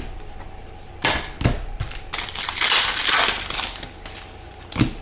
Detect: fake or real real